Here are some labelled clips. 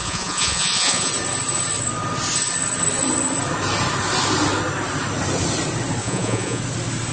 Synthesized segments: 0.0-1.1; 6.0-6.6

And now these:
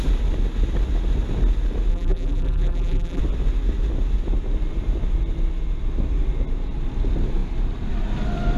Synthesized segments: 1.9-3.2